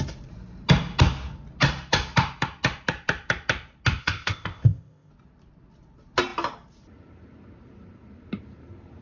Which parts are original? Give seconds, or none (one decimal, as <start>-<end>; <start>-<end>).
0.0-4.0; 5.1-9.0